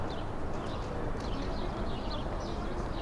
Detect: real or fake real